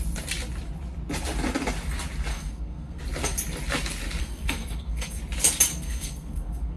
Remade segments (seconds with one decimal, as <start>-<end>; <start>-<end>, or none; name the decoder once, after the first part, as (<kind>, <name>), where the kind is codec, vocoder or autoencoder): 2.3-3.0 (codec, SNAC); 4.2-5.2; 5.7-6.8